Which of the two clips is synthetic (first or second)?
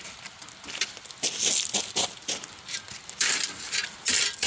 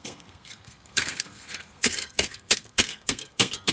second